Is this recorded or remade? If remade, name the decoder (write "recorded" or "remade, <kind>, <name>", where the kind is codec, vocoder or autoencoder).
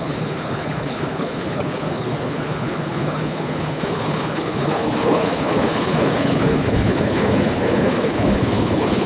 remade, codec, HILCodec